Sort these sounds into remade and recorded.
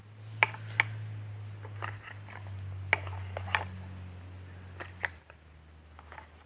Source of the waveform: recorded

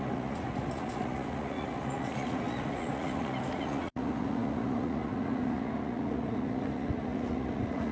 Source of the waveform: remade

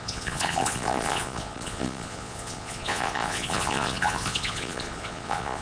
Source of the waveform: remade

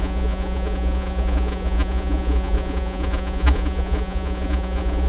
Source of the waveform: remade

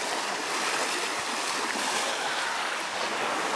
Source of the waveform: recorded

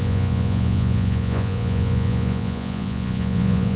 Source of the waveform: remade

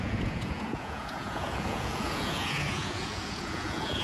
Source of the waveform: remade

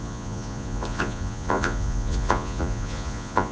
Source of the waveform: remade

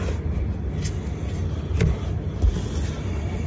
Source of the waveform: recorded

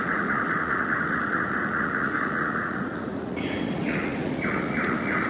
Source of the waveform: remade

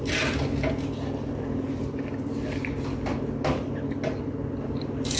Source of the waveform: recorded